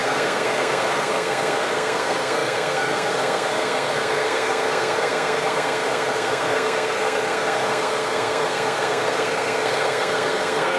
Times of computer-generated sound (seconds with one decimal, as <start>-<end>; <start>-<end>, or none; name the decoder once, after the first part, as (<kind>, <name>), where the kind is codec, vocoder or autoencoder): 0.0-10.8 (codec, SNAC)